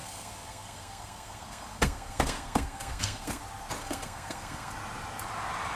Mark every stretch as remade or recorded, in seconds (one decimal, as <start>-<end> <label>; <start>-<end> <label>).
0.0-3.4 remade; 3.4-3.8 recorded; 3.8-4.7 remade; 4.7-5.8 recorded